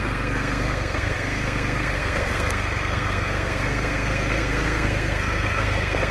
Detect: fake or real fake